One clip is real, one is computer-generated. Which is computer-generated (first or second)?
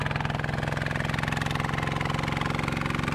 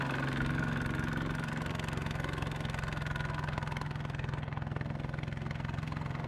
second